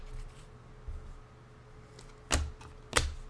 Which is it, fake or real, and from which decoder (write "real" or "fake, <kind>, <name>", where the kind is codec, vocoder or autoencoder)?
real